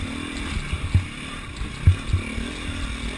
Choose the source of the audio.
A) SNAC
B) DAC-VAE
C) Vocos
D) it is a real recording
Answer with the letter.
D